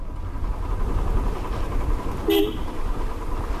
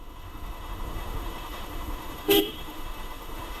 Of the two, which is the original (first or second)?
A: first